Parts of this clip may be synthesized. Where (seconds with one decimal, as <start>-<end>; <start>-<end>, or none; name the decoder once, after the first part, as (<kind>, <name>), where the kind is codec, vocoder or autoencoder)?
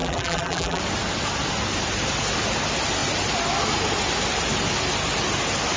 0.0-0.8 (vocoder, BigVGAN v2)